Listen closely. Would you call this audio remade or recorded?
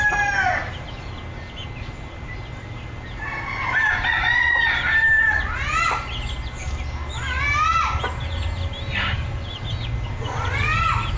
recorded